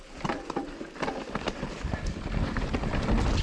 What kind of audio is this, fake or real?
real